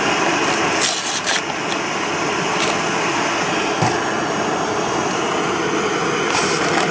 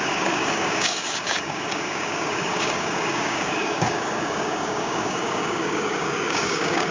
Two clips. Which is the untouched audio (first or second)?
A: first